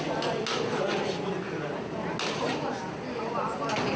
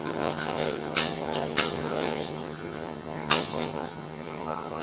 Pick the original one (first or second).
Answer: first